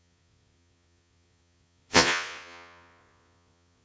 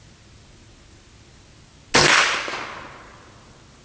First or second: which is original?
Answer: second